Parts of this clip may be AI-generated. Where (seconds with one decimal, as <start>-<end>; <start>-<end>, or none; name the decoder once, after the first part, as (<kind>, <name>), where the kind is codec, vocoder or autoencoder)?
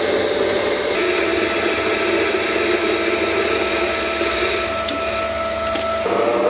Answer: none